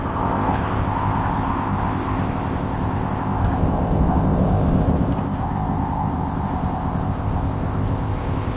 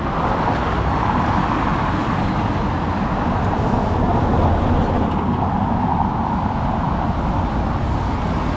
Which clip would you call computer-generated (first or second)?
first